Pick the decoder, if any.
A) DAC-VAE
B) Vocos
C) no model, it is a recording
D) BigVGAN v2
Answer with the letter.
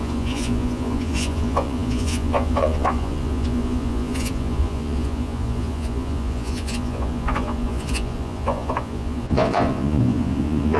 B